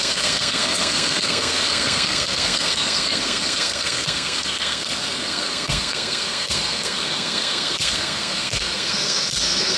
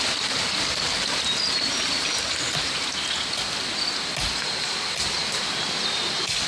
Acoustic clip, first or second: second